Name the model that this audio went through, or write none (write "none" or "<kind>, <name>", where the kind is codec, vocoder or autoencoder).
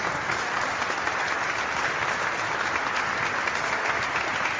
none